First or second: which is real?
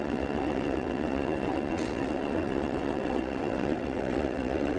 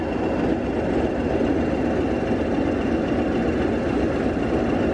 second